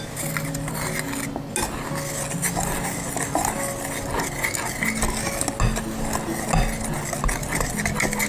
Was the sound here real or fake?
real